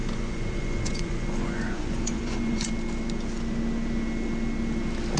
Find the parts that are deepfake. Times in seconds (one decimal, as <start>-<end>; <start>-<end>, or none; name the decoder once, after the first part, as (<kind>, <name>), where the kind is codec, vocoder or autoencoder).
0.0-2.7 (vocoder, Vocos)